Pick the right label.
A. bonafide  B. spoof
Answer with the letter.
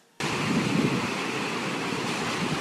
A